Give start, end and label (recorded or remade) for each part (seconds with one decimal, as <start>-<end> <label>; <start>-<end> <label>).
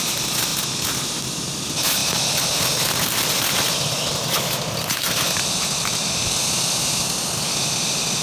0.0-8.2 recorded